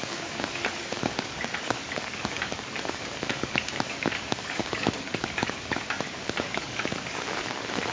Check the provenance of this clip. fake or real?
fake